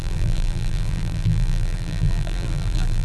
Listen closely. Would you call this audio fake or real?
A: fake